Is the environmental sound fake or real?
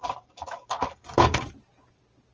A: real